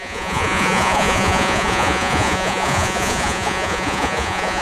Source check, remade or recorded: remade